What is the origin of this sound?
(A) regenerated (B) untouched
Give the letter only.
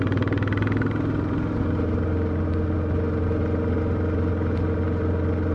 B